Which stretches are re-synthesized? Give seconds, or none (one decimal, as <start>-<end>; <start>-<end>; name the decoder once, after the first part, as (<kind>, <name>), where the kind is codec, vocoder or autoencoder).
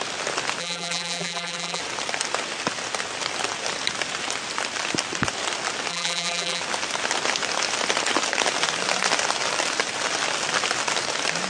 0.6-1.8 (vocoder, BigVGAN v2); 5.9-6.6